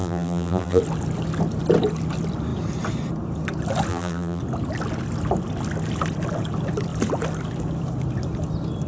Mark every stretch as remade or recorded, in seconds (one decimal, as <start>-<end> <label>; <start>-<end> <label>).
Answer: 0.0-0.8 remade; 0.8-3.9 recorded; 3.9-4.4 remade; 4.4-8.9 recorded